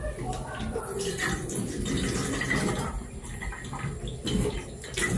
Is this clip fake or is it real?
real